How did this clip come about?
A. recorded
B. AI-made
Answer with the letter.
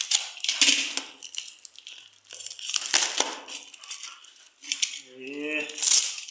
A